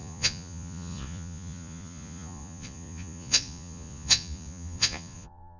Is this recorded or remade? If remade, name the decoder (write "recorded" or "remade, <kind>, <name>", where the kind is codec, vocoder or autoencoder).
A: remade, vocoder, Vocos